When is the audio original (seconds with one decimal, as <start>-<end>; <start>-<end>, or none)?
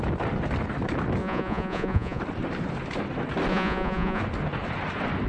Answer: 0.0-1.2; 2.2-3.5; 4.2-5.3